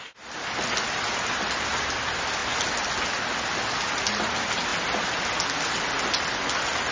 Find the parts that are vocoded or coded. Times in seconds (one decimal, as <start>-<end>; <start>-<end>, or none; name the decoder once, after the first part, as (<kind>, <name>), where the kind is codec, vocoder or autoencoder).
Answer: none